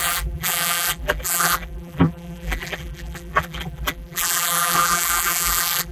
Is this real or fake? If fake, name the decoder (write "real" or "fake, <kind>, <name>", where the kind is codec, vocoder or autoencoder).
fake, vocoder, BigVGAN v2